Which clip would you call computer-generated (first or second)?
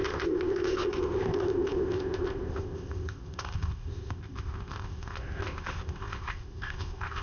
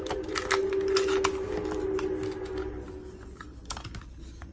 first